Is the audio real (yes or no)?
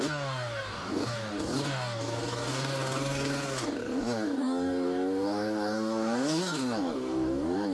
no